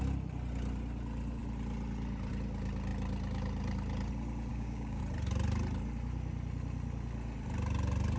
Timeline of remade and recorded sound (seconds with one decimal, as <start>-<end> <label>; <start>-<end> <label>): 0.0-4.5 recorded; 4.5-5.0 remade; 5.0-8.2 recorded